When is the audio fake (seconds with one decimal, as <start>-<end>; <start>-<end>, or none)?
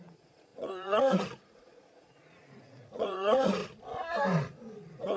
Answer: 0.0-3.6; 4.7-5.2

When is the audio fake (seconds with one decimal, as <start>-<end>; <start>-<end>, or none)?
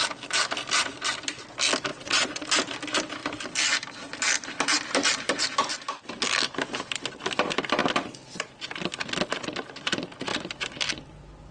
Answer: 1.9-2.4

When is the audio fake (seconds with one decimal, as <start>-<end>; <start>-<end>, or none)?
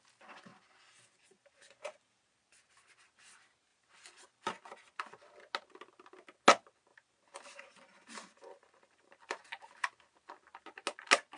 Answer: 0.5-2.3; 3.7-4.5; 6.9-9.4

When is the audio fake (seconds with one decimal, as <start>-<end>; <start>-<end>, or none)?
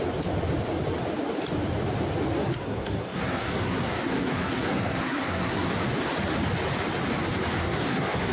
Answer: 2.4-5.7; 7.6-8.3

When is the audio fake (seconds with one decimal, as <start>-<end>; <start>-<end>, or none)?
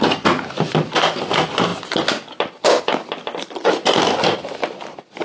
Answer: none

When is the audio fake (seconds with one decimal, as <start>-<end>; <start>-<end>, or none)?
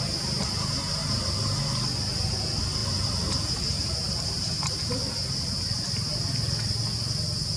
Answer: 1.0-1.6; 2.8-4.9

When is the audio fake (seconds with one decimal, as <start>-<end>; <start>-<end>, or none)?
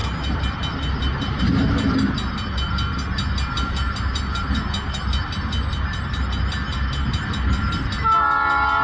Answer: none